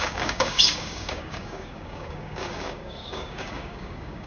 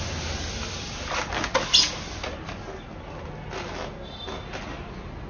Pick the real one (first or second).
second